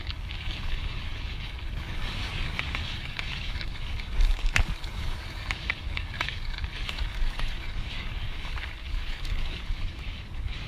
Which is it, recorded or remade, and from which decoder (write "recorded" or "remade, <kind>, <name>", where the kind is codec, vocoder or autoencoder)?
remade, codec, DAC